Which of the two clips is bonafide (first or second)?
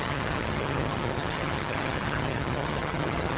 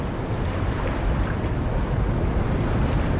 second